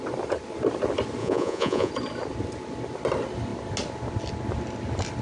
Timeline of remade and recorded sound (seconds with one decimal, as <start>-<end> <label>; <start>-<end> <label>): 0.0-1.2 recorded; 1.2-1.9 remade; 1.9-5.2 recorded